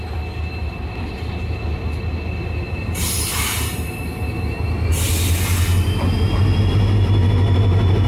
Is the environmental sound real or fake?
real